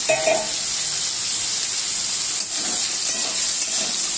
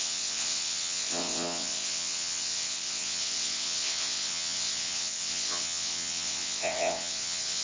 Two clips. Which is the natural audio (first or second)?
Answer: first